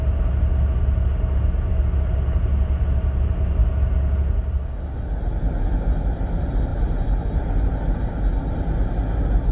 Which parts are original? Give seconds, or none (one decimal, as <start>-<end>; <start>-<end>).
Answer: 0.0-9.5